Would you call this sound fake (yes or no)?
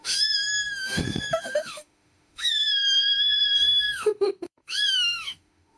yes